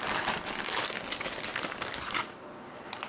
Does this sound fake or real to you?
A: real